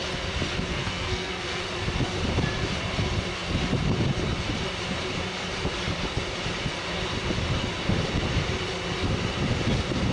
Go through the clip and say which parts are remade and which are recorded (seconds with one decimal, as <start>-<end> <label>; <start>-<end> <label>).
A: 0.0-0.7 recorded; 0.7-1.6 remade; 1.6-10.1 recorded